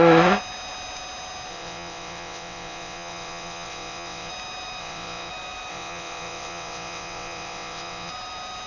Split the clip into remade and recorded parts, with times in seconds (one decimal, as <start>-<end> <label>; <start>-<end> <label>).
0.0-1.5 recorded; 1.5-4.3 remade; 4.3-4.8 recorded; 4.8-5.3 remade; 5.3-5.7 recorded; 5.7-8.1 remade; 8.1-8.7 recorded